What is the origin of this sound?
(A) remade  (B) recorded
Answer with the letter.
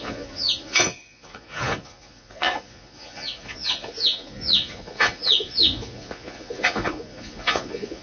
A